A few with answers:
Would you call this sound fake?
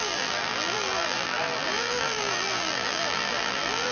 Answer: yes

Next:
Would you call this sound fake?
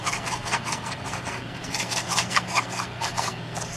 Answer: yes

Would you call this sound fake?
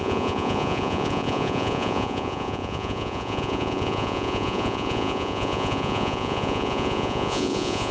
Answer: yes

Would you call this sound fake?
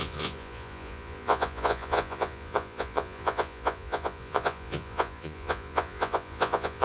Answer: yes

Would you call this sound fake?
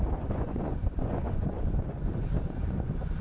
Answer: yes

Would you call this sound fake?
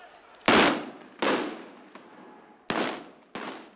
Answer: no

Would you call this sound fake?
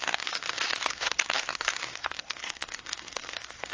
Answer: yes